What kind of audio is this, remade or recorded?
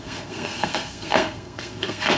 remade